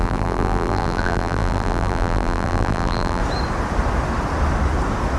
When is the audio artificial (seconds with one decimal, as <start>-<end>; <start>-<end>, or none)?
0.0-3.2